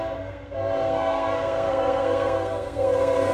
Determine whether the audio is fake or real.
fake